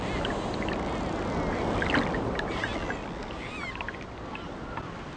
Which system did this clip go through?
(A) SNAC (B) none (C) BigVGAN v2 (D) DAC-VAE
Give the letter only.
B